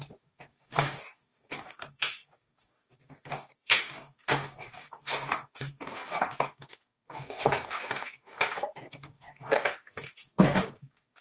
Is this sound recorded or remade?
remade